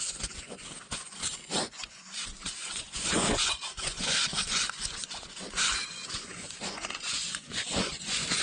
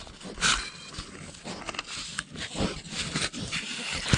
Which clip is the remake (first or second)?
first